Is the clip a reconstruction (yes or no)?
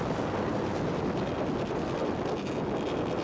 no